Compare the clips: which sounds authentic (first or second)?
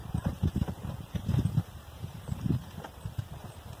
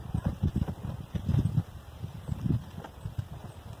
second